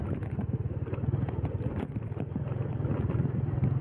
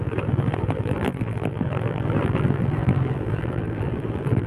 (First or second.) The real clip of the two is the first